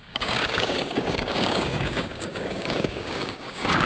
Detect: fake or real fake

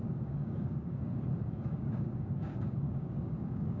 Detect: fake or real fake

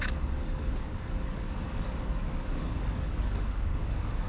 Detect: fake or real fake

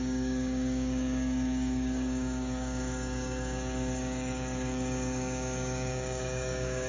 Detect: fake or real fake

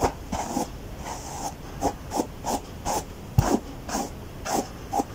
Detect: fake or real real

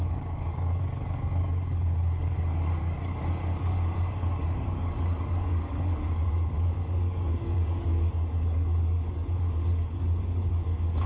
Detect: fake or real fake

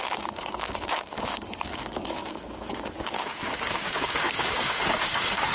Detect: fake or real fake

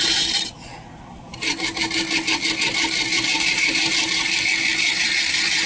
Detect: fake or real real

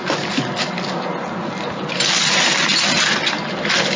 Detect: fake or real real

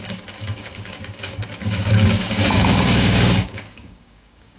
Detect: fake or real fake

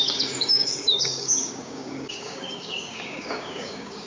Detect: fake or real fake